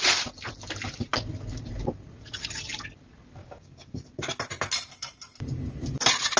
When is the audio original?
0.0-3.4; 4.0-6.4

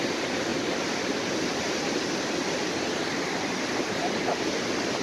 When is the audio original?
0.0-5.0

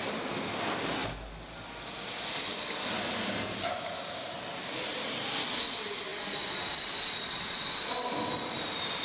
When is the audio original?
0.0-9.0

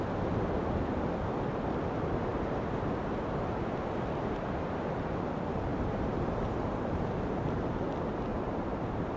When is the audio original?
0.0-2.3; 2.9-5.7; 7.1-8.3

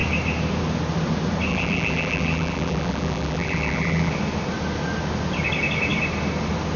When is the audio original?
0.0-1.5; 4.1-6.8

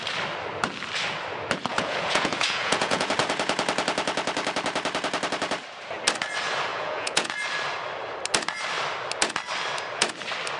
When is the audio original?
0.0-1.7; 3.1-6.7; 7.3-10.6

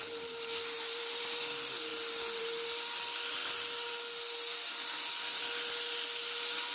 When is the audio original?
1.9-2.4; 3.4-5.4

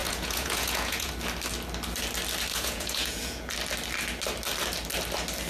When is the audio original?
1.1-2.5; 3.5-5.5